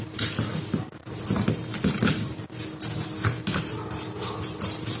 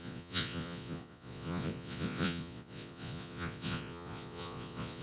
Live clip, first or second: first